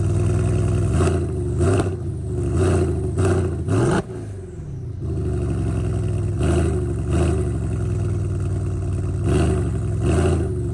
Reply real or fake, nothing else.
real